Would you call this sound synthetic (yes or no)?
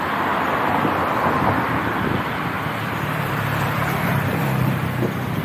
yes